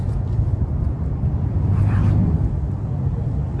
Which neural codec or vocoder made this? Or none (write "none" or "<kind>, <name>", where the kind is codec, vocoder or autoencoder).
none